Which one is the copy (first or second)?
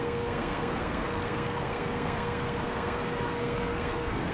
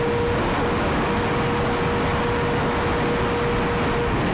first